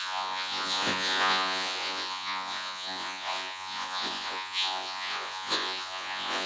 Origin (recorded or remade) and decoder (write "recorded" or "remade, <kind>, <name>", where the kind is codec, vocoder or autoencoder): remade, vocoder, Vocos